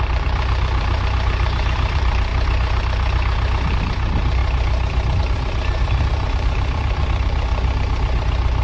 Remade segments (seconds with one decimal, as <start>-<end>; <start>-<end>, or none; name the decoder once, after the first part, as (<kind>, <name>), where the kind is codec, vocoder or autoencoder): 0.0-2.3 (vocoder, BigVGAN v2); 3.7-4.4; 5.2-7.5